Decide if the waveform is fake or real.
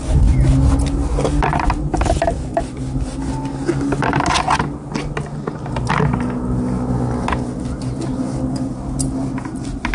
real